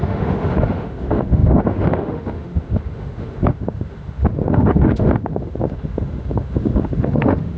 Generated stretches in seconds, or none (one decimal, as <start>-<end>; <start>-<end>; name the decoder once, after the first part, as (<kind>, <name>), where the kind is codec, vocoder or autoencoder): 0.0-7.6 (autoencoder, DAC-VAE)